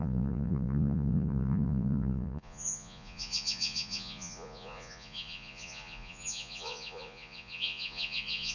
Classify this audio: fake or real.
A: fake